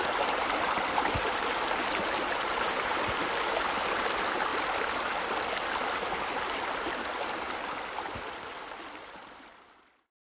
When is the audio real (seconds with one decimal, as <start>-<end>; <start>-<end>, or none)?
0.0-10.3

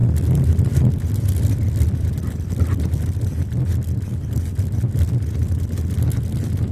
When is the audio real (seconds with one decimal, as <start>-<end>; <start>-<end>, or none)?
0.0-6.7

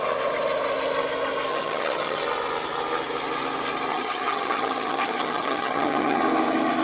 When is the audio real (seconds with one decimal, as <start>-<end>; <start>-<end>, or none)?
0.0-1.5; 2.2-3.9; 6.2-6.8

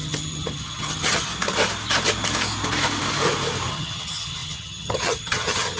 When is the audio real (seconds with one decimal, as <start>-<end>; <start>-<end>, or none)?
1.3-3.7

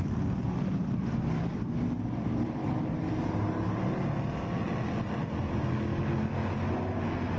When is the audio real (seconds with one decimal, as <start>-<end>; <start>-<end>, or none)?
0.0-7.4

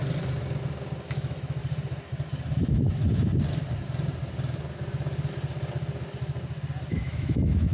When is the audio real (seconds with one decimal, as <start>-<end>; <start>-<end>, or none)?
0.0-1.1; 1.6-2.6; 3.0-6.9

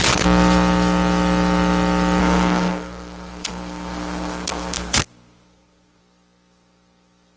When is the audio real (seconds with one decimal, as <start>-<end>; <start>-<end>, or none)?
0.0-2.2; 6.0-7.4